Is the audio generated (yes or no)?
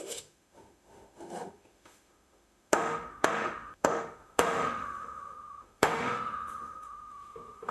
yes